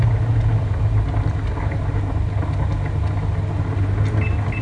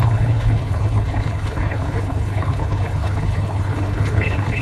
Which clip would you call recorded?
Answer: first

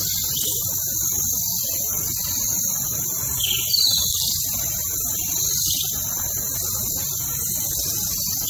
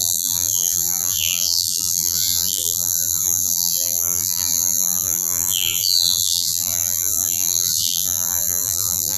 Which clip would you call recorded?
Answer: first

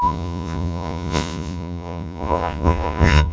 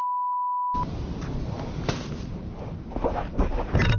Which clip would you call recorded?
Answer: second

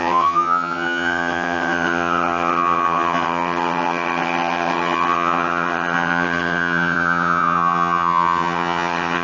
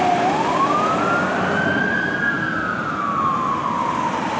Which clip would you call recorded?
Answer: second